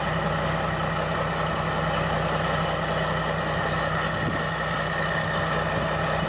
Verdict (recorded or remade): recorded